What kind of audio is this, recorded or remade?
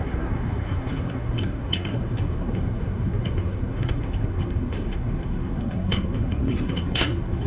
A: remade